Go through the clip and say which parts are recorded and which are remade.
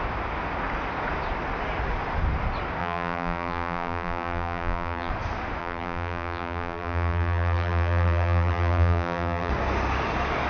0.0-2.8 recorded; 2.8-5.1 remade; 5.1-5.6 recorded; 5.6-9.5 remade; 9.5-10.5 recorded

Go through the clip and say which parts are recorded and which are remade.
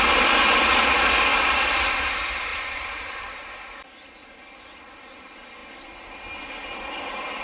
0.0-1.3 recorded; 1.3-2.1 remade; 2.1-2.5 recorded; 2.5-3.3 remade; 3.3-7.4 recorded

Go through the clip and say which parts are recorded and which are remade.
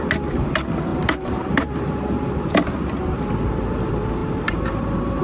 0.0-0.9 recorded; 0.9-2.0 remade; 2.0-4.2 recorded; 4.2-5.2 remade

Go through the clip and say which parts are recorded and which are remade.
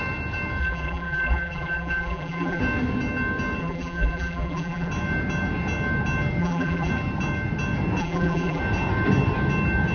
0.0-0.6 recorded; 0.6-2.6 remade; 2.6-3.6 recorded; 3.6-4.9 remade; 4.9-6.4 recorded; 6.4-6.9 remade; 6.9-8.0 recorded; 8.0-8.6 remade; 8.6-9.9 recorded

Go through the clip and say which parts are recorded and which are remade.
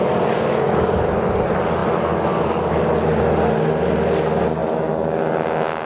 0.0-5.9 recorded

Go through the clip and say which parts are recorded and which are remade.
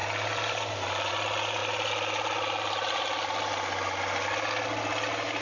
0.0-1.1 remade; 1.1-5.4 recorded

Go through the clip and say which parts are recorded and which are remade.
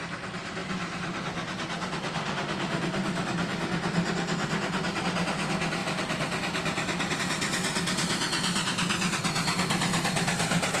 0.0-10.8 recorded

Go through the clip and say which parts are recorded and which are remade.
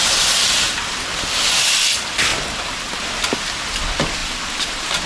0.0-2.3 remade; 2.3-3.0 recorded; 3.0-5.1 remade